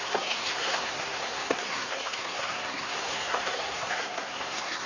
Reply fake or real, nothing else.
fake